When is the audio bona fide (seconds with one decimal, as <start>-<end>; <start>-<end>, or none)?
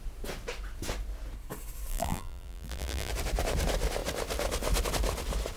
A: 0.0-1.9; 3.1-5.6